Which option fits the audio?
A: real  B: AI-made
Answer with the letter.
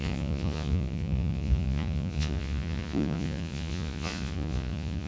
B